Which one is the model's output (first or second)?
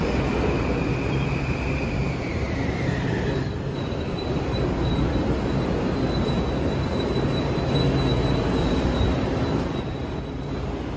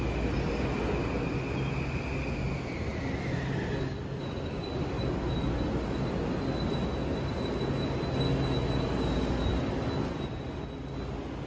first